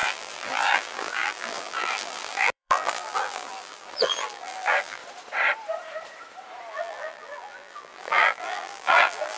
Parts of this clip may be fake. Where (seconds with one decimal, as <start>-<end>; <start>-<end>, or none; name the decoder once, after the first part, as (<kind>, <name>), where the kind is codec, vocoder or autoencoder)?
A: 0.0-5.0 (vocoder, BigVGAN v2); 6.7-9.4